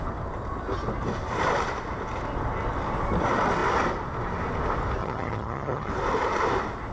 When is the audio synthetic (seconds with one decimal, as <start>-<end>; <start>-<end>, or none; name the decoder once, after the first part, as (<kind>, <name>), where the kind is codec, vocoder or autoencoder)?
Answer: 5.0-5.9 (vocoder, HiFi-GAN)